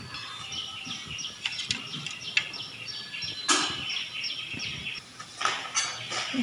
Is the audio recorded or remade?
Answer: recorded